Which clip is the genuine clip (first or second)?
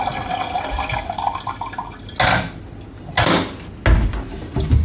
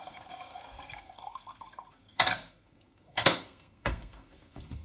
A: first